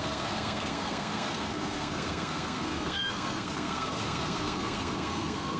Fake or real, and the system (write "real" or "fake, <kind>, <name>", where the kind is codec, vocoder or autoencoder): fake, codec, SNAC